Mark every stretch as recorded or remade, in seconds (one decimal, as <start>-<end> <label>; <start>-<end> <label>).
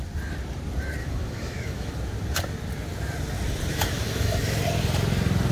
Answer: 0.0-1.0 recorded; 1.0-1.9 remade; 1.9-3.7 recorded; 3.7-4.6 remade; 4.6-5.5 recorded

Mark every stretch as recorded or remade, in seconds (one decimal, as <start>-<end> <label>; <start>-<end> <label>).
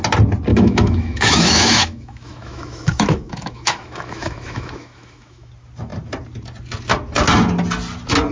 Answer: 0.0-0.5 recorded; 0.5-5.5 remade; 5.5-8.3 recorded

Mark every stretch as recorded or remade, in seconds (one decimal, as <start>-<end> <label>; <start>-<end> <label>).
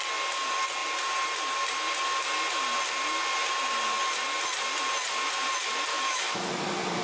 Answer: 0.0-5.9 recorded; 5.9-6.5 remade; 6.5-7.0 recorded